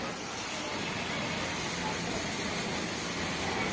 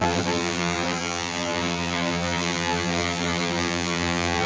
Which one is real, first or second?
first